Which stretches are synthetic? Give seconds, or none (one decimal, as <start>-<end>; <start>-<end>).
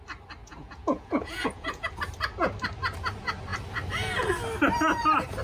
0.4-1.9